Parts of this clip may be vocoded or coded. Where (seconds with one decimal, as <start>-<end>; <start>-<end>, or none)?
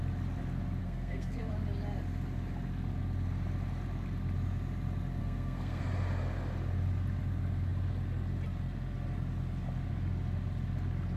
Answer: 0.8-1.5; 5.2-5.8